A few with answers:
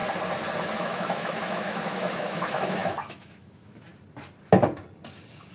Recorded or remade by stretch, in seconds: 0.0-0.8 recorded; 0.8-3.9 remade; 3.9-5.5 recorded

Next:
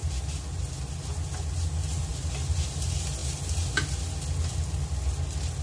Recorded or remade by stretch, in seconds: 0.0-2.1 recorded; 2.1-2.7 remade; 2.7-5.6 recorded